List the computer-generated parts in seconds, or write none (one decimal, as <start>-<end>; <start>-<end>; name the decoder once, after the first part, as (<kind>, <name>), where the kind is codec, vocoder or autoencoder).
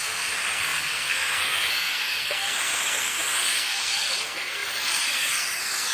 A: 0.0-5.9 (codec, SNAC)